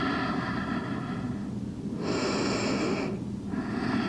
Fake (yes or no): no